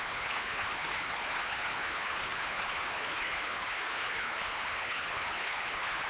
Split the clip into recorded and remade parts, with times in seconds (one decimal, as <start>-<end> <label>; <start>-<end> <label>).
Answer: 0.0-6.1 remade